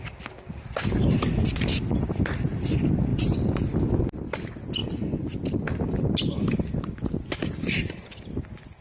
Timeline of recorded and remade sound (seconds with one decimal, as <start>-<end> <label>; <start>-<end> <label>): 0.0-3.1 recorded; 3.1-3.9 remade; 3.9-8.8 recorded